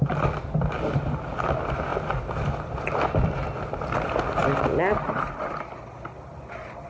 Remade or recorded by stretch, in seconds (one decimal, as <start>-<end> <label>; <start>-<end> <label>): 0.0-1.9 recorded; 1.9-2.5 remade; 2.5-6.9 recorded